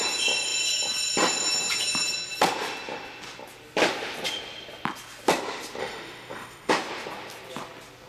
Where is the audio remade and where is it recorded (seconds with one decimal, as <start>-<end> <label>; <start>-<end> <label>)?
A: 0.0-5.8 recorded; 5.8-6.7 remade; 6.7-8.1 recorded